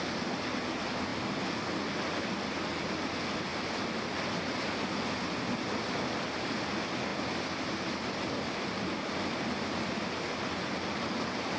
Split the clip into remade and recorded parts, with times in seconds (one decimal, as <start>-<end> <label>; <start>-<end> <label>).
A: 0.0-11.6 recorded